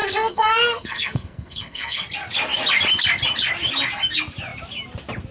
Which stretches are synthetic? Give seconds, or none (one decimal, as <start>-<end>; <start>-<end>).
0.0-2.0